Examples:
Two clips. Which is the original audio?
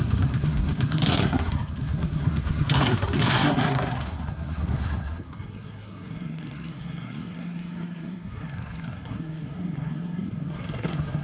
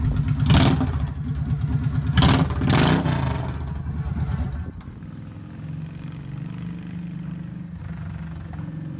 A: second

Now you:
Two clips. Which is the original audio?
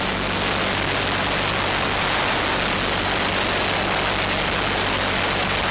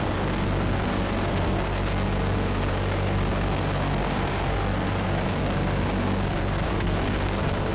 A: first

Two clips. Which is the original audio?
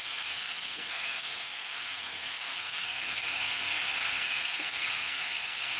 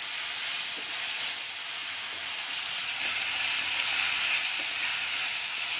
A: second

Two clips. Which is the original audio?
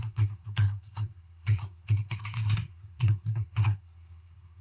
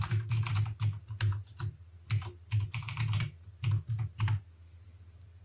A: second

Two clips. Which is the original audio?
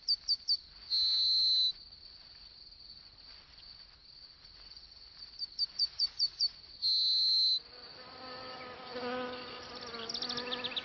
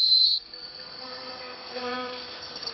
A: first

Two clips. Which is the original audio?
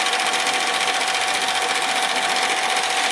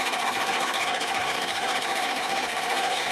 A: first